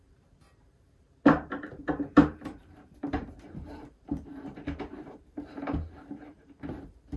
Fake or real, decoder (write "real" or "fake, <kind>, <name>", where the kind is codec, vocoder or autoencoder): fake, vocoder, BigVGAN v2